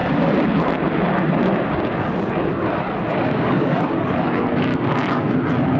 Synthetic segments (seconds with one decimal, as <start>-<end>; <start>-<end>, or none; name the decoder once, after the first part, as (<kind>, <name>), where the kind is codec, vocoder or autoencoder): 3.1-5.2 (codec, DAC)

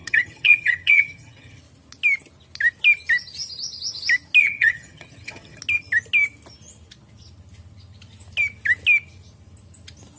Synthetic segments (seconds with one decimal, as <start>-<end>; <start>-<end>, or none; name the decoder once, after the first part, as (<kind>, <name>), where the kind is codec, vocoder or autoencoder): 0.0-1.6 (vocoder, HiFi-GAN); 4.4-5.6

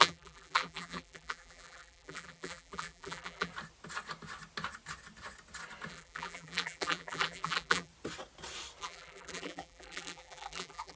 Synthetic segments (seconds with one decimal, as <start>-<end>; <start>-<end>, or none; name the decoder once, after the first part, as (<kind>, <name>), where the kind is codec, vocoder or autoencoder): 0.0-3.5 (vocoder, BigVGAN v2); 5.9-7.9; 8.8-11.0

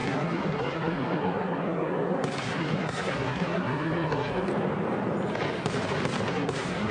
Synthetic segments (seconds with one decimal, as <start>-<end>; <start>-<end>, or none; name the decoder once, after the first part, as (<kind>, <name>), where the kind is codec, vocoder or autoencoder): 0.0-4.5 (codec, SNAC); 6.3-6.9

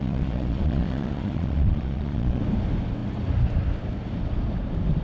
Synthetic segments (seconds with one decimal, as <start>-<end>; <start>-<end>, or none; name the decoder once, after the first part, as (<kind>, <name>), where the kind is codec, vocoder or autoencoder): 0.0-2.4 (vocoder, Vocos)

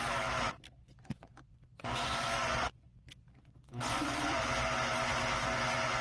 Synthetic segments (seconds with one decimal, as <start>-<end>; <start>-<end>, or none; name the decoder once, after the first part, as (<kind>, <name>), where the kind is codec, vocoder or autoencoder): 0.8-4.4 (vocoder, Vocos)